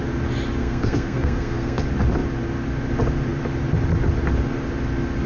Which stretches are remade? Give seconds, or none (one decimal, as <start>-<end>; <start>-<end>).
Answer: 0.6-1.8